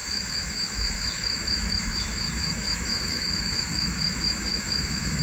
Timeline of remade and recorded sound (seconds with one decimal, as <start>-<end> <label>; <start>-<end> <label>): 0.0-5.2 remade